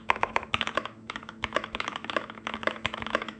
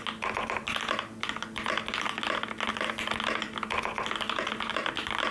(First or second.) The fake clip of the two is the first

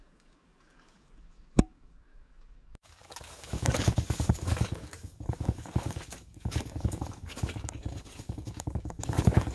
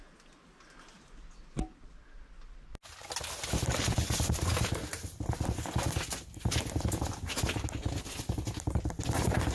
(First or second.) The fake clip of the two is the first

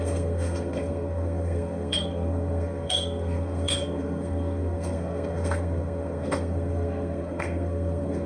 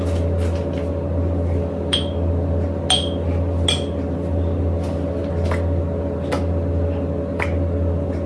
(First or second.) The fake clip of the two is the first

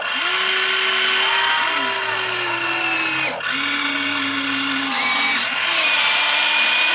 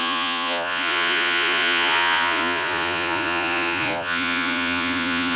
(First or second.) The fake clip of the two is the second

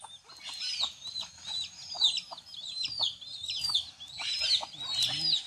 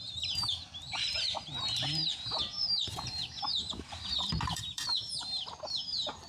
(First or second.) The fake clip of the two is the second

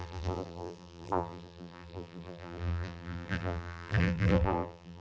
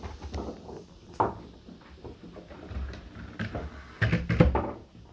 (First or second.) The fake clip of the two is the first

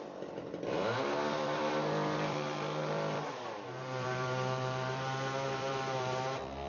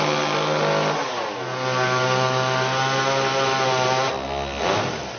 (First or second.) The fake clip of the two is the first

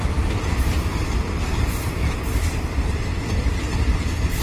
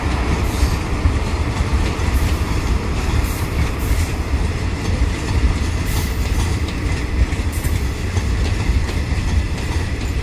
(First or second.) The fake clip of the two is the second